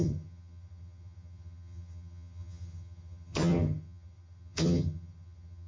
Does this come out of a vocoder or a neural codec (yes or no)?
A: yes